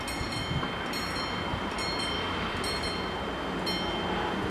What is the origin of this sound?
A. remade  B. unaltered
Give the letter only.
B